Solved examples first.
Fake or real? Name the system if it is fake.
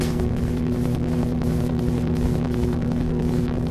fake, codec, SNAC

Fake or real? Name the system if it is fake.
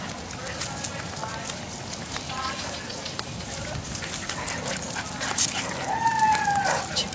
real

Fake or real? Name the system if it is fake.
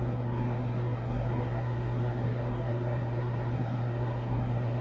fake, codec, SNAC